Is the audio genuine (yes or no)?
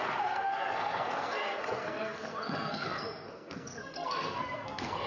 no